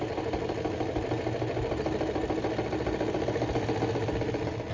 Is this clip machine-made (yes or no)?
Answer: no